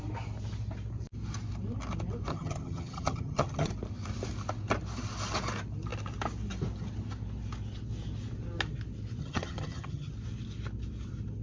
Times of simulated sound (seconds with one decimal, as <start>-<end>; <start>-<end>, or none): 2.3-3.7; 9.2-10.1